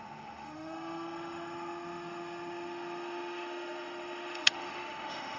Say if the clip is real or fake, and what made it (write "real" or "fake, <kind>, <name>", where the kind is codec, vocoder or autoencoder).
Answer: fake, autoencoder, DAC-VAE